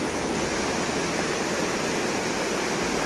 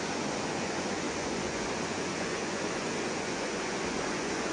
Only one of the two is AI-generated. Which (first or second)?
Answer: second